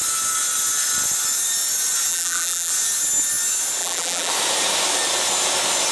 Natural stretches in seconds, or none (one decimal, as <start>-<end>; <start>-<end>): 0.0-2.1; 2.7-3.8; 4.3-5.9